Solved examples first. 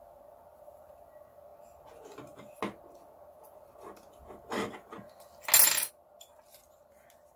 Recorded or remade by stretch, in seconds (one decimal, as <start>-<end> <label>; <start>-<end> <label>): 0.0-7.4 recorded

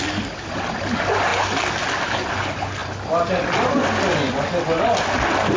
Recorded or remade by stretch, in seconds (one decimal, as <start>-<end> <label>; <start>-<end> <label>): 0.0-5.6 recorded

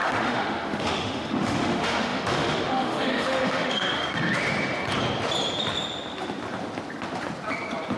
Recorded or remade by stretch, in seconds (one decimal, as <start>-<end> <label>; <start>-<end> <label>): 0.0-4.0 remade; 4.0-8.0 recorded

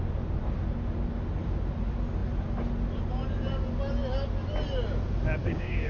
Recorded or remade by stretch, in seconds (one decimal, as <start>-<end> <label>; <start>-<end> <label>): 0.0-5.4 recorded; 5.4-5.9 remade

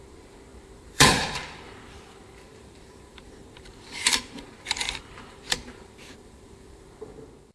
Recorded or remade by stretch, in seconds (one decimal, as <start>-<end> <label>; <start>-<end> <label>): 0.0-7.5 remade

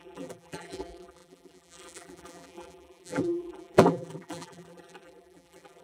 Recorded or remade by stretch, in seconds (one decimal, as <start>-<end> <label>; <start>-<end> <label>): 0.0-5.8 remade

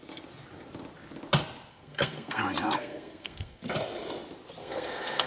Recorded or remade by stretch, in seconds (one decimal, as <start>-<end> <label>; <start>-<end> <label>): 0.0-1.7 recorded; 1.7-2.4 remade; 2.4-2.8 recorded; 2.8-3.6 remade; 3.6-4.6 recorded; 4.6-5.3 remade